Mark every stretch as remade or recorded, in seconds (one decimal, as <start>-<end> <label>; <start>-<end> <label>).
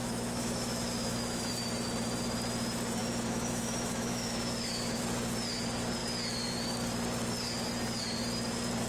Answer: 0.0-1.5 remade; 1.5-3.0 recorded; 3.0-5.0 remade; 5.0-8.9 recorded